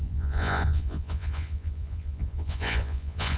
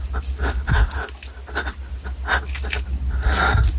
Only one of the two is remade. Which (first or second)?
first